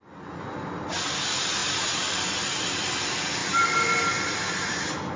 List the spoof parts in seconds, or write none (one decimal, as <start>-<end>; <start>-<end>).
none